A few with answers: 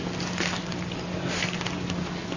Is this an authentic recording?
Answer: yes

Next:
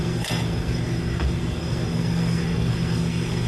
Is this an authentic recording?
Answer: no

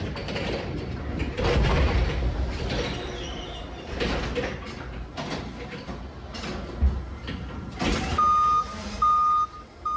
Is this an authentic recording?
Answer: yes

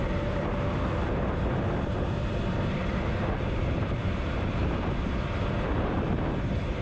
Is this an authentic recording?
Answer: no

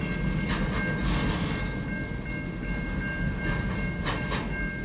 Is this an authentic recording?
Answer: yes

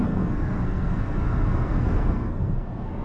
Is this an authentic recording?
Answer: no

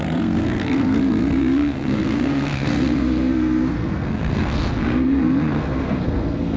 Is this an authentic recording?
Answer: no